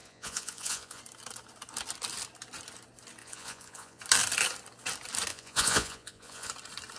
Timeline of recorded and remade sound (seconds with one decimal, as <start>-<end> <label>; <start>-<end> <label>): 0.0-1.0 remade; 1.0-3.2 recorded; 3.2-4.0 remade; 4.0-5.3 recorded; 5.3-6.5 remade; 6.5-7.0 recorded